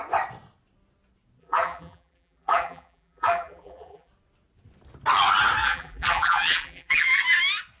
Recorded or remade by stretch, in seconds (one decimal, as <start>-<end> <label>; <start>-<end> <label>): 0.0-1.4 recorded; 1.4-4.1 remade; 4.1-5.6 recorded; 5.6-7.2 remade; 7.2-7.8 recorded